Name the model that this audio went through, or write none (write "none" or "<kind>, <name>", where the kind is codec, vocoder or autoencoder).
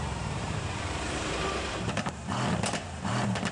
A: vocoder, BigVGAN v2